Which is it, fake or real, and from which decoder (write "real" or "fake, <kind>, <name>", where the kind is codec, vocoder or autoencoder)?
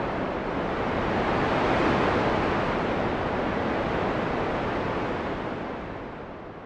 real